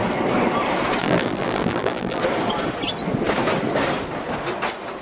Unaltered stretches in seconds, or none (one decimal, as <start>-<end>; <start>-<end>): 0.0-1.0; 2.2-5.0